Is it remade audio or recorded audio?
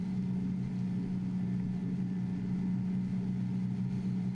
recorded